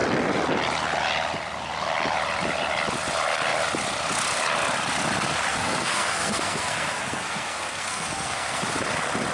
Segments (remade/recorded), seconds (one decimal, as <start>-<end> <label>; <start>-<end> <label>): 0.0-5.5 recorded; 5.5-8.6 remade; 8.6-9.3 recorded